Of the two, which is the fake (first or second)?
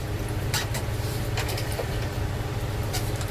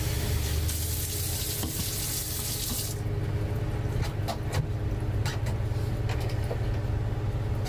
first